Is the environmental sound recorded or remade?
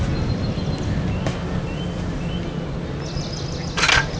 recorded